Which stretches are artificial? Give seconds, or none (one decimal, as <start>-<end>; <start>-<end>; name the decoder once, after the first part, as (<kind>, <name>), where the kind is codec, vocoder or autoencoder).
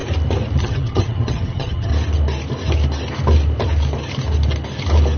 0.6-1.9 (vocoder, HiFi-GAN)